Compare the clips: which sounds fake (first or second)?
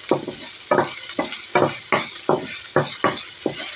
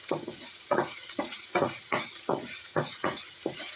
second